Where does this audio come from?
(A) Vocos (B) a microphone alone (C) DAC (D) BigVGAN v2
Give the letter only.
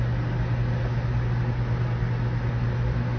B